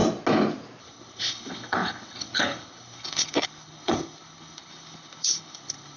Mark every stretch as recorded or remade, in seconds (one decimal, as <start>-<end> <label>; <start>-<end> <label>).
0.0-0.8 recorded; 0.8-6.0 remade

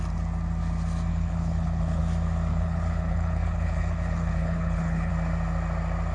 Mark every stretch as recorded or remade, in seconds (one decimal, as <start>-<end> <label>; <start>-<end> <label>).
0.0-1.1 recorded; 1.1-2.0 remade; 2.0-2.5 recorded; 2.5-5.1 remade; 5.1-6.1 recorded

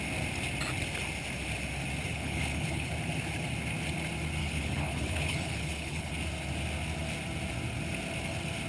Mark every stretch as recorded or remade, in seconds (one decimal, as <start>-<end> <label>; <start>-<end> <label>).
0.0-2.1 recorded; 2.1-2.9 remade; 2.9-4.4 recorded; 4.4-6.1 remade; 6.1-8.7 recorded

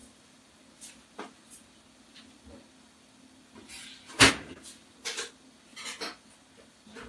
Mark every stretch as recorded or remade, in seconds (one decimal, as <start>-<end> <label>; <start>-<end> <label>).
0.0-7.1 recorded

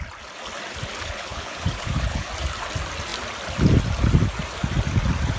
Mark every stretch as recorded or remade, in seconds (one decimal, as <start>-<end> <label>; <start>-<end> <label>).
0.0-1.0 recorded; 1.0-2.3 remade; 2.3-5.4 recorded

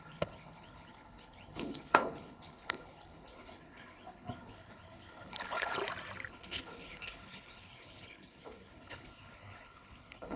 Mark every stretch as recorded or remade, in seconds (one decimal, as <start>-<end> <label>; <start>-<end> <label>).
0.0-5.8 remade; 5.8-6.3 recorded; 6.3-10.4 remade